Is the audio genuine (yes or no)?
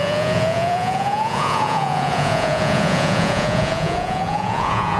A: no